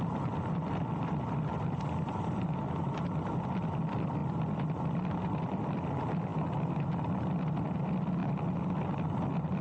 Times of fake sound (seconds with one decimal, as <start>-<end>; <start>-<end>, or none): none